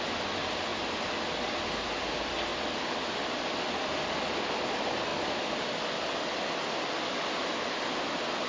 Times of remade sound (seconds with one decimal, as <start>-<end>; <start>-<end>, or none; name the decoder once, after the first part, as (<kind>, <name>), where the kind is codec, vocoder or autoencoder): none